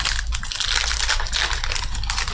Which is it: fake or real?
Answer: real